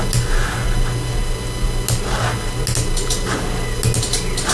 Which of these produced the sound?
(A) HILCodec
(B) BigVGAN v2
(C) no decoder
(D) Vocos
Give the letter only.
C